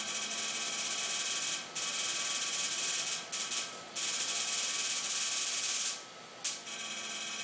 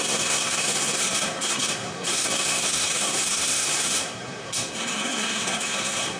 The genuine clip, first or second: first